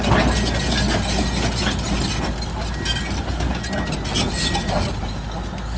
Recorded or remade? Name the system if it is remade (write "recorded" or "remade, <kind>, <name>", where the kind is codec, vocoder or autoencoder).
recorded